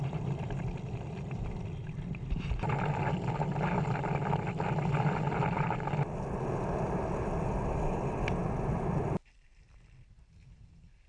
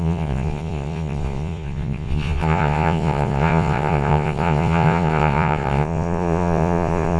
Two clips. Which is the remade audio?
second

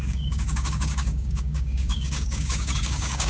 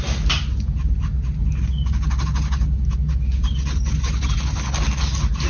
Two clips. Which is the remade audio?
first